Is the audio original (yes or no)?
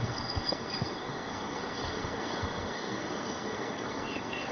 no